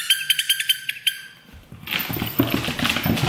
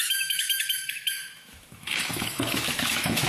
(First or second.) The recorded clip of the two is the first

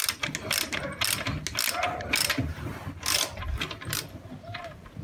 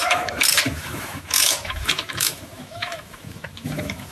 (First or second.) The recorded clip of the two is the first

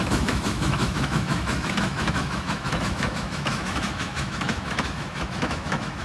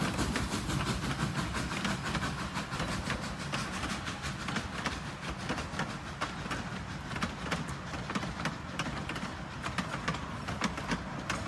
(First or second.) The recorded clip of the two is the second